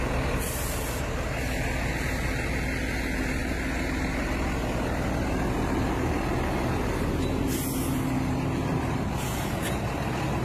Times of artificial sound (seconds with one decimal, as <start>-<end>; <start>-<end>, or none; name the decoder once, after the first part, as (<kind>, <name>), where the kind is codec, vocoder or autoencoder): none